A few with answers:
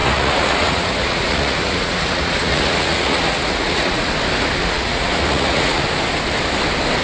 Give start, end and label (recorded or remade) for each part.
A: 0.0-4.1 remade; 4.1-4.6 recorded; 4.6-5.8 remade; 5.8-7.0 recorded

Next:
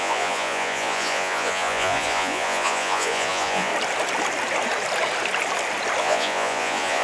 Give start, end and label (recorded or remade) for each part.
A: 0.0-3.7 remade; 3.7-6.0 recorded; 6.0-7.0 remade